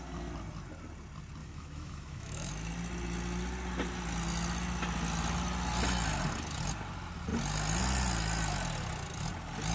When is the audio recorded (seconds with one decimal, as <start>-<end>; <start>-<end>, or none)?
0.0-1.4; 2.5-9.7